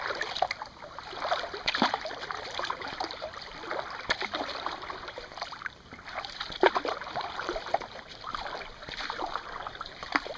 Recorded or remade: remade